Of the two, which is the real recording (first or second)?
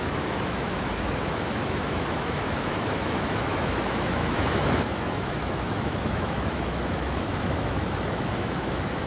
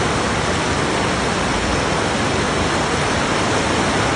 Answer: second